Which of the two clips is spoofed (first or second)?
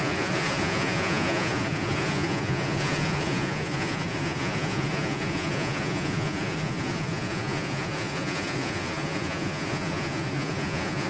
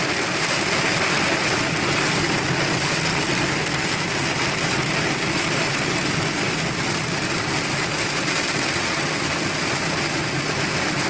first